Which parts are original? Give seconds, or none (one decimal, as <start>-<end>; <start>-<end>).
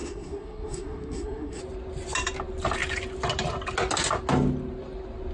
1.6-5.3